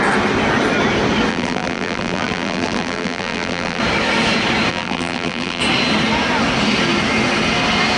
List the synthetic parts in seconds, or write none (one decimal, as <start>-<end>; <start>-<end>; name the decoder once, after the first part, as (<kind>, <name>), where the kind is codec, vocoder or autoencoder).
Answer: 1.3-3.8 (vocoder, BigVGAN v2); 4.7-5.6